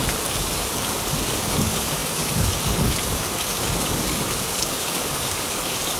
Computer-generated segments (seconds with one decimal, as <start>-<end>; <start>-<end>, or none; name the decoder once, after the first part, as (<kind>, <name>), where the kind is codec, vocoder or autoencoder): 0.0-6.0 (codec, DAC)